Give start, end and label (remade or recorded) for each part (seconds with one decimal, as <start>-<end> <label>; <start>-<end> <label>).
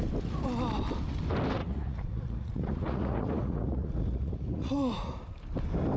0.0-1.6 recorded; 1.6-5.2 remade; 5.2-6.0 recorded